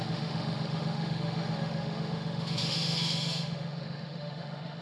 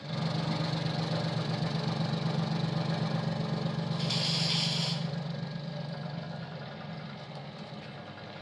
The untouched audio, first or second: second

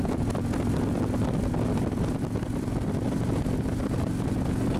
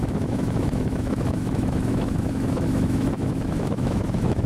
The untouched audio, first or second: first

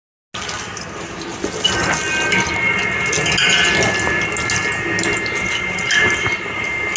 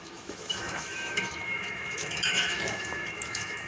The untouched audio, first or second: first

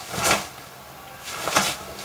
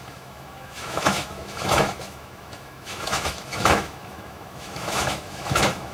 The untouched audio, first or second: first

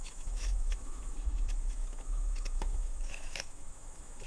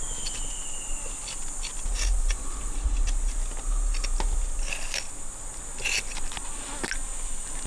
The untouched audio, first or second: second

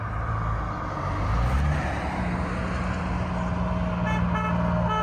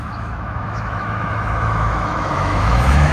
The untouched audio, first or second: first